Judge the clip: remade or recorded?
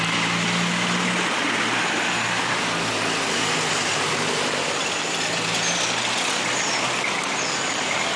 recorded